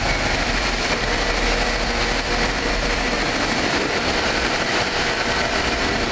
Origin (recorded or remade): remade